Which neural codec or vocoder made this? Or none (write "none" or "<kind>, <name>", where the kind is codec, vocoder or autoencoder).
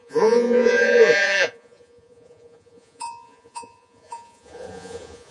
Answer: vocoder, Vocos